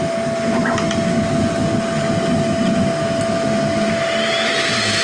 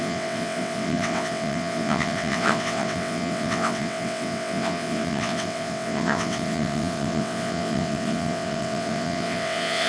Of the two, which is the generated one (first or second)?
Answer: second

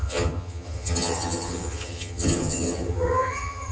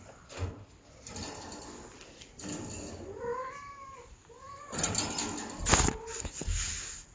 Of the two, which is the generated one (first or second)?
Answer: first